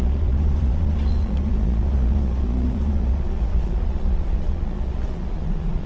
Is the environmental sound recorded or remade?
remade